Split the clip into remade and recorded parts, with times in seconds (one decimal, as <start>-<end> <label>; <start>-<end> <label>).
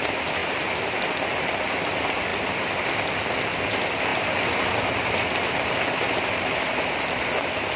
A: 0.0-7.8 recorded